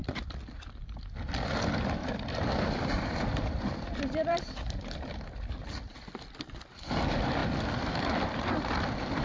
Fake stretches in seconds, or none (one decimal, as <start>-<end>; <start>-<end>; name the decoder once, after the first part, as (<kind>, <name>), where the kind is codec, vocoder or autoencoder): 0.0-0.8 (vocoder, BigVGAN v2); 2.0-6.9; 7.4-9.2